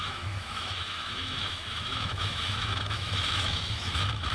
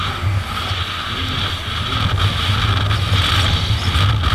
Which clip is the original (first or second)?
second